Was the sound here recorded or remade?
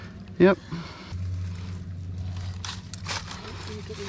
recorded